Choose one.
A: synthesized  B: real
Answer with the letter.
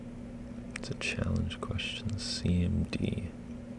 B